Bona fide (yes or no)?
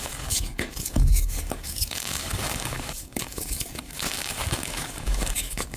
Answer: no